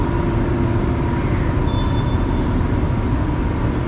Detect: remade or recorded recorded